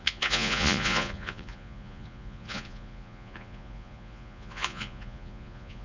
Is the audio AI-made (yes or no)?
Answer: yes